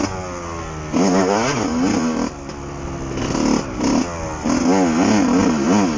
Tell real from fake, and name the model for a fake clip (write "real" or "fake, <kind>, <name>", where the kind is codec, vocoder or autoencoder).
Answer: real